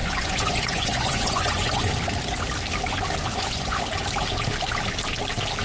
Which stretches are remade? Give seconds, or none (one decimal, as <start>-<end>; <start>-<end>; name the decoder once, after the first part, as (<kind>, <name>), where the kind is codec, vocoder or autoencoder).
0.0-1.9 (vocoder, Vocos); 3.3-3.8